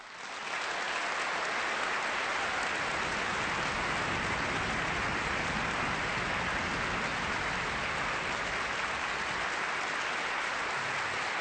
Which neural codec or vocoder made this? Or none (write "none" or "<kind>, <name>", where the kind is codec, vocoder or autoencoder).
none